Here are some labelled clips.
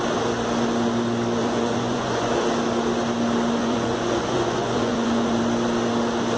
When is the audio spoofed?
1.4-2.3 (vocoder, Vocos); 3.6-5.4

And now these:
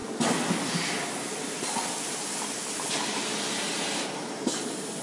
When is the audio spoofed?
none

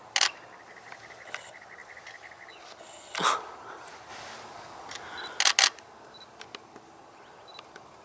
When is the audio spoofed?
none

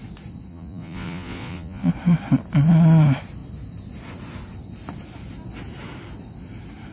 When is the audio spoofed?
0.5-1.9 (vocoder, Vocos)

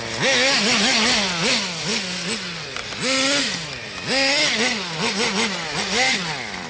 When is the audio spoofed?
none

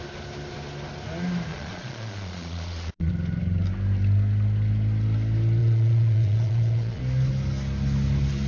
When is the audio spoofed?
1.5-3.1 (vocoder, Vocos); 5.6-7.0